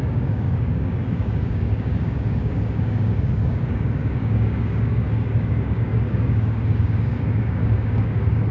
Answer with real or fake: fake